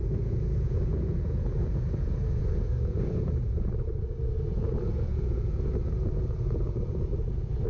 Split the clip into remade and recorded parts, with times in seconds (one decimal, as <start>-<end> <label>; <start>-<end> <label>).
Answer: 0.0-7.7 remade